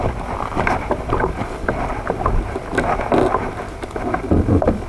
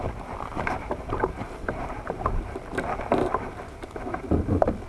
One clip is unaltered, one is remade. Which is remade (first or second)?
second